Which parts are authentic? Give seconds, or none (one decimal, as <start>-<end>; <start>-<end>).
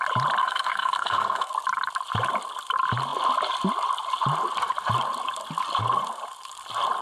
0.0-0.4; 1.5-7.0